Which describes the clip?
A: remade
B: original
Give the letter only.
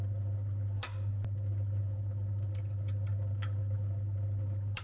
B